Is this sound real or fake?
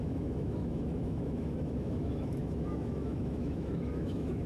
fake